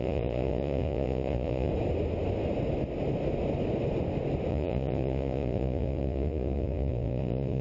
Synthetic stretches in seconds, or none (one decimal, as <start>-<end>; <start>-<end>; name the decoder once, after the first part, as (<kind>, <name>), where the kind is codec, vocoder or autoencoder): 0.0-1.7 (vocoder, Vocos); 4.5-7.6